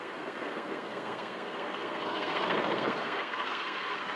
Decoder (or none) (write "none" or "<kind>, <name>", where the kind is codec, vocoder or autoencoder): codec, SNAC